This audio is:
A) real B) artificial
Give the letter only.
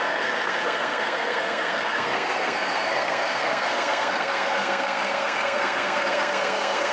B